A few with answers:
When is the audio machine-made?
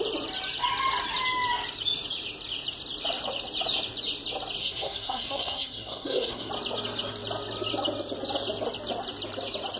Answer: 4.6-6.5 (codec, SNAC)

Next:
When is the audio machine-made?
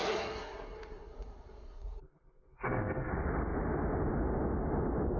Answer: 0.0-3.1 (codec, SNAC)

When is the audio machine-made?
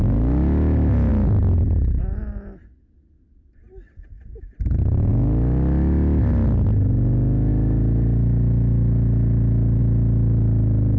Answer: none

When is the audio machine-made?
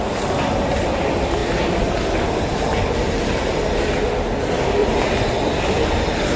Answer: 1.4-3.1 (vocoder, BigVGAN v2); 4.8-5.8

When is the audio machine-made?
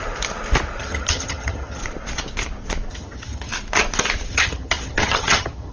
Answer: 0.8-1.8 (vocoder, HiFi-GAN); 2.9-3.5; 4.3-5.7